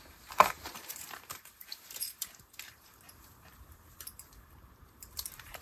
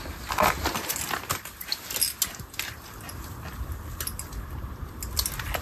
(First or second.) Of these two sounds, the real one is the second